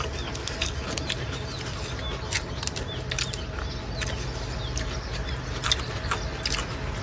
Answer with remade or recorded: recorded